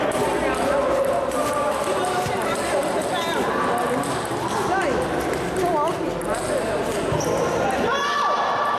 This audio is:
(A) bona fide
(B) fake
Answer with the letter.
A